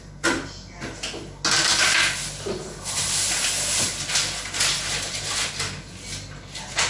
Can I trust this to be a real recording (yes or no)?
yes